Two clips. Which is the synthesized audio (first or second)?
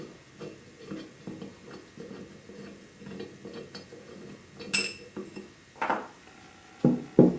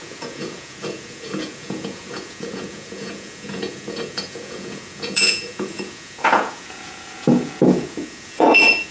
second